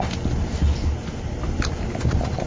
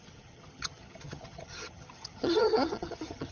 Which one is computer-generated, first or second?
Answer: second